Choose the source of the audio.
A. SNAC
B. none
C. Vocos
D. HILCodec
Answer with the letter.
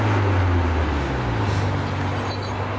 B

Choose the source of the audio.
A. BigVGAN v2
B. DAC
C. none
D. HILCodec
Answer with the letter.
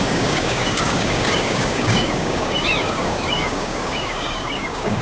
B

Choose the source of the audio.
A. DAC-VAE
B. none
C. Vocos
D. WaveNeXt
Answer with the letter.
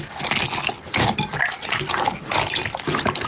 B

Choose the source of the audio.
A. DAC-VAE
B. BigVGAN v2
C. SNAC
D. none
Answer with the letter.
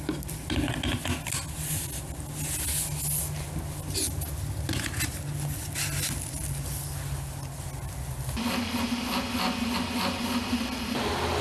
D